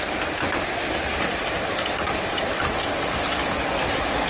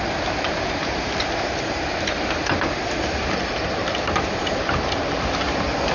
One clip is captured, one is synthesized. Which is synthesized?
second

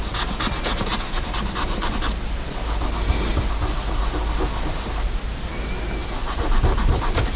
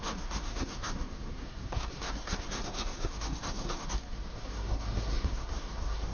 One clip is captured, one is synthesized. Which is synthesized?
second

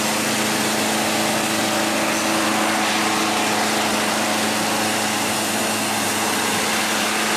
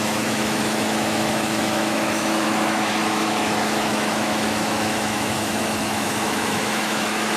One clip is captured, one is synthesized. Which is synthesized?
second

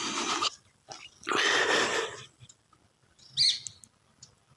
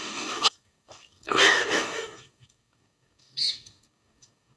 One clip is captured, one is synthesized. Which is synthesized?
second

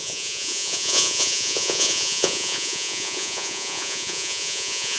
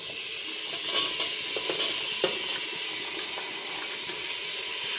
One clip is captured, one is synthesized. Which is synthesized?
first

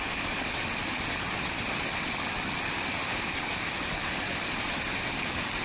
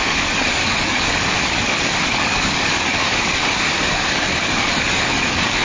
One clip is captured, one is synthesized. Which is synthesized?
second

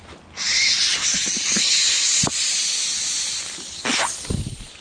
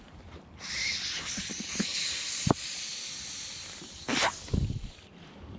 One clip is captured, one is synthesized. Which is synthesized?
second